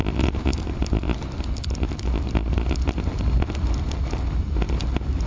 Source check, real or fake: real